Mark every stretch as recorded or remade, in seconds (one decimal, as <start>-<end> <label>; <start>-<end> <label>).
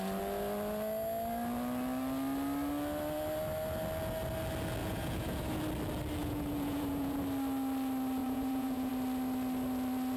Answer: 0.0-4.8 recorded; 4.8-5.6 remade; 5.6-6.2 recorded; 6.2-7.2 remade; 7.2-8.2 recorded; 8.2-8.9 remade; 8.9-10.2 recorded